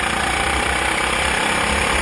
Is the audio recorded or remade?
remade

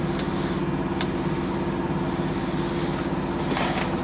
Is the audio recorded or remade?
recorded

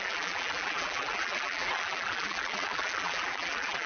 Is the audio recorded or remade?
remade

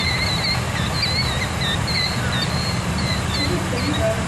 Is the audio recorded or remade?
recorded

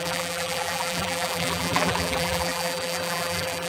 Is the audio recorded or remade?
remade